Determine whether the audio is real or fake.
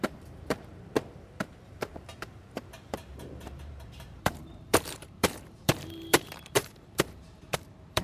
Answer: fake